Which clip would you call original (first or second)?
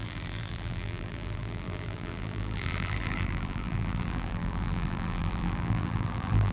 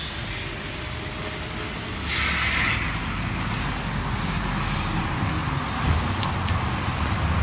second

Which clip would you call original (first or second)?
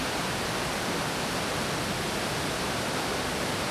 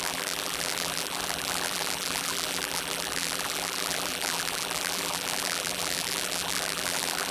first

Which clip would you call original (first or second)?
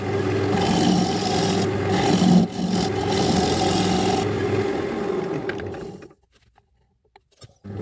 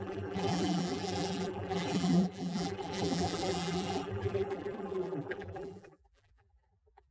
first